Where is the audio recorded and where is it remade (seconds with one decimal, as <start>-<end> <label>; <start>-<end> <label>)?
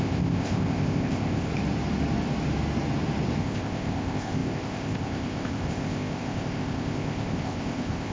0.0-1.5 remade; 1.5-3.4 recorded; 3.4-8.1 remade